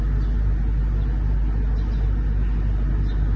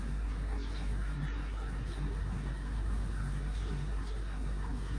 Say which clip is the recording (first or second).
first